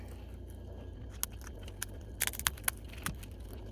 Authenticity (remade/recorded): recorded